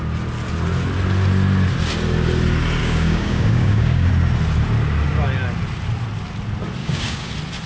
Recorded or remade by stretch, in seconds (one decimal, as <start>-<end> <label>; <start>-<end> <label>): 0.0-2.8 recorded; 2.8-4.1 remade; 4.1-6.8 recorded; 6.8-7.3 remade; 7.3-7.7 recorded